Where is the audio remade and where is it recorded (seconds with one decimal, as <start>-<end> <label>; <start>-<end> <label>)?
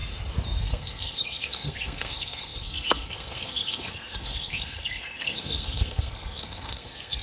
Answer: 0.0-0.6 recorded; 0.6-7.2 remade